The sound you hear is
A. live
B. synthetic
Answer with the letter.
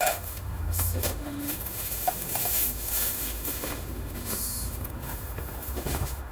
B